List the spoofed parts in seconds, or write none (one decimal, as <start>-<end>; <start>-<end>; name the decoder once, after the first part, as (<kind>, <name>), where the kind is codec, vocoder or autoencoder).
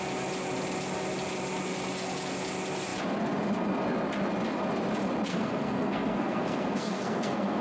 5.3-7.6 (codec, SNAC)